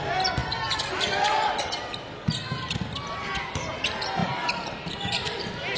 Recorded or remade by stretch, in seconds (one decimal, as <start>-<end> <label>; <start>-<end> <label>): 0.0-5.8 recorded